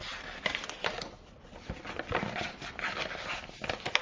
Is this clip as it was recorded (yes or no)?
yes